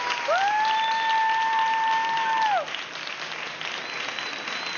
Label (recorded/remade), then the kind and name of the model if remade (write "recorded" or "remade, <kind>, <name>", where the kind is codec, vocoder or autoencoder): recorded